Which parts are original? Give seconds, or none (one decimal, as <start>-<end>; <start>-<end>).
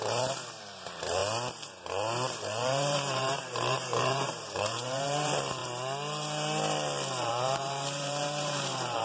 1.2-2.3; 5.6-7.3